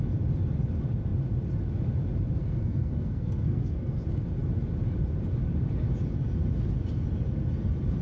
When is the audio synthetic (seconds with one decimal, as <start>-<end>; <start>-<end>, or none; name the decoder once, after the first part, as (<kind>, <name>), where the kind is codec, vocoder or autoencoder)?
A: 2.4-4.0 (codec, SNAC)

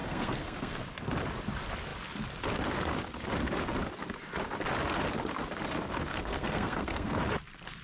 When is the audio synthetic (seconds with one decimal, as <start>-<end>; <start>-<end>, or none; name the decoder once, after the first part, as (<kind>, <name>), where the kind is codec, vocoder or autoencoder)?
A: 0.0-0.8 (codec, SNAC); 6.1-7.2

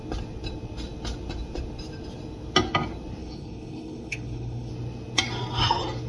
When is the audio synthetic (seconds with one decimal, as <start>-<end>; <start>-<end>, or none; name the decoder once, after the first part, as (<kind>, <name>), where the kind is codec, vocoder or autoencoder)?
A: 3.2-4.7 (codec, HILCodec)

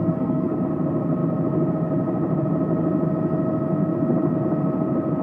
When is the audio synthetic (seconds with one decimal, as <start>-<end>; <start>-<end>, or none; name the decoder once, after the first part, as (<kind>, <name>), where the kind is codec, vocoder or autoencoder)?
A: 0.0-0.6 (codec, SNAC)

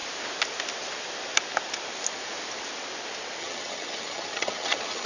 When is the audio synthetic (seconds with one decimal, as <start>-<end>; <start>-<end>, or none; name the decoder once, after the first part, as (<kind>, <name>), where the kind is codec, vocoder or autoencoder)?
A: 3.4-5.1 (vocoder, HiFi-GAN)

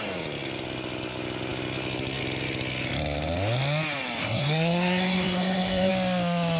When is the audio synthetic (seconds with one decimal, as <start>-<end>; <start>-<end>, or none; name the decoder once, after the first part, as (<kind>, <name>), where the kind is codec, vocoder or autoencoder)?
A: 4.2-5.9 (codec, SNAC)

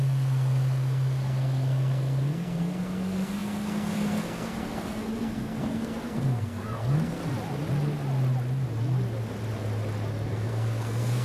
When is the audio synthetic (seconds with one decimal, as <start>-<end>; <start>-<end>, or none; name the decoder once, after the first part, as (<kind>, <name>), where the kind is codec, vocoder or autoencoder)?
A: 0.0-7.2 (codec, SNAC); 10.3-11.2

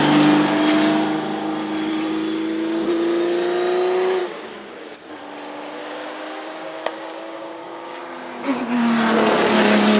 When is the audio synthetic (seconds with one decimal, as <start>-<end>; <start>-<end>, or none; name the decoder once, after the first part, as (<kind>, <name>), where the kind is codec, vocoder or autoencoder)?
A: 4.2-5.1 (codec, DAC); 5.8-8.0